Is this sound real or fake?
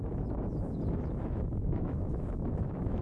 fake